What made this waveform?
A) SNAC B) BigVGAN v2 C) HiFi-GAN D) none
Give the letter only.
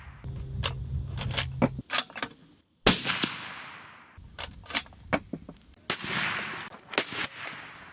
D